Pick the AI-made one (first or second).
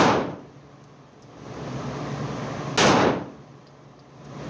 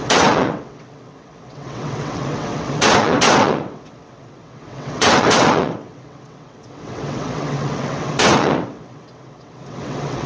second